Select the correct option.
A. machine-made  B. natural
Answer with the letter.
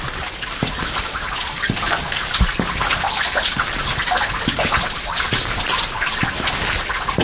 B